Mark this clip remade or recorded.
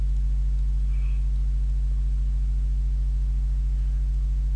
recorded